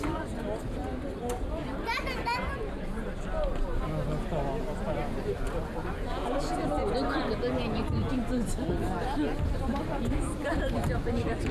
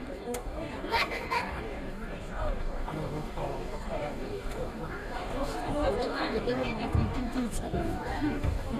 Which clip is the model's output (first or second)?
second